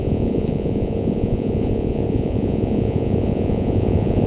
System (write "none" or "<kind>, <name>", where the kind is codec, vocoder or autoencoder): vocoder, Vocos